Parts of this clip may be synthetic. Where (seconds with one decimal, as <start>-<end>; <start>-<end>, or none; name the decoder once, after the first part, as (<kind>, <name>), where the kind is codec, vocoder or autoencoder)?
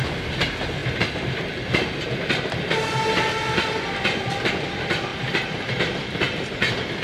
0.8-1.4 (vocoder, BigVGAN v2)